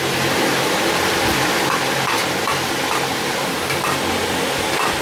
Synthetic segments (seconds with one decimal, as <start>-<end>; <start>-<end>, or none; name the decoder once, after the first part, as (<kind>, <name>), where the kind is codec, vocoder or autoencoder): none